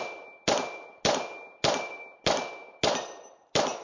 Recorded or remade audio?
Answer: recorded